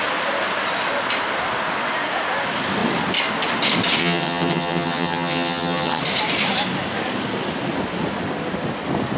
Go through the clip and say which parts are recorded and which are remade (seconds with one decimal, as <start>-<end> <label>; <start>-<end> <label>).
0.0-4.0 recorded; 4.0-6.0 remade; 6.0-9.2 recorded